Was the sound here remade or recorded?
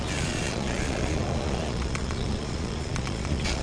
remade